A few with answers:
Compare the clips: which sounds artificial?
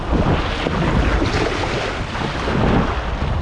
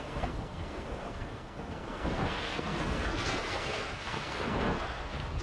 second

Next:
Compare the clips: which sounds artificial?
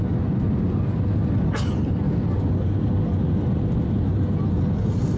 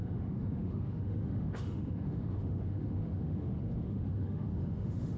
second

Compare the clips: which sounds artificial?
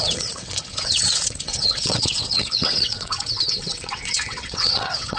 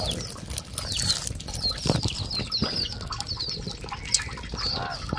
first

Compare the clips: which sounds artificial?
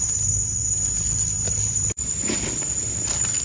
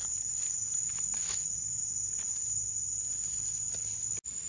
first